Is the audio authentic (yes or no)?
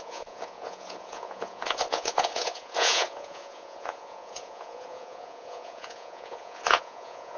no